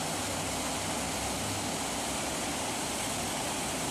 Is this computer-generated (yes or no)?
no